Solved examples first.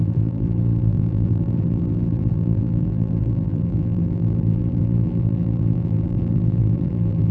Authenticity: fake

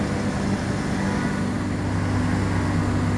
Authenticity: real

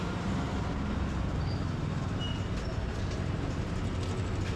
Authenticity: real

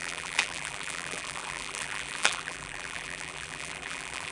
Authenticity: fake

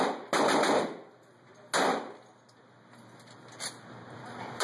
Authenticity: real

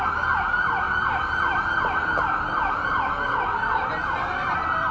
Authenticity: real